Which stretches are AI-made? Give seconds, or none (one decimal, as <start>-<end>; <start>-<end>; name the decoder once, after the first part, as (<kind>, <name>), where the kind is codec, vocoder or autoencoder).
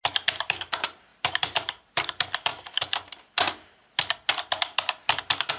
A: 1.1-1.9 (vocoder, BigVGAN v2); 2.5-3.0